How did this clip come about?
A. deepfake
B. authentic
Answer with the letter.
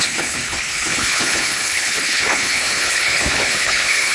A